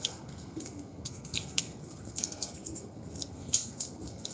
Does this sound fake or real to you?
fake